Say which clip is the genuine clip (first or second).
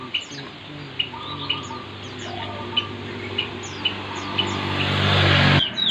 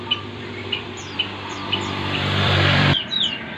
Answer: first